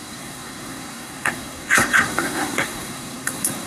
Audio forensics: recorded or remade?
remade